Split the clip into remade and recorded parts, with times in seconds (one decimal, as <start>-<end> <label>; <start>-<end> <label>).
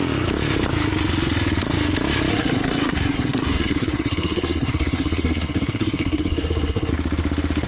0.0-2.3 recorded; 2.3-6.9 remade; 6.9-7.7 recorded